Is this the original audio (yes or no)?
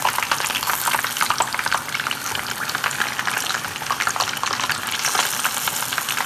yes